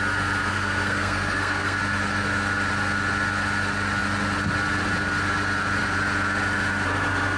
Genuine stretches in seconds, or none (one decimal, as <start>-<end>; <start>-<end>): 0.0-0.5; 1.8-7.4